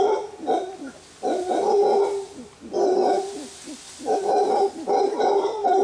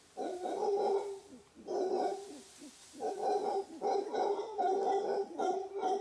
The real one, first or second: first